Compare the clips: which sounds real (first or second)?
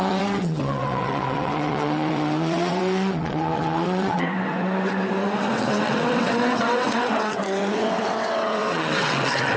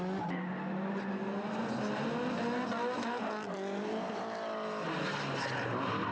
second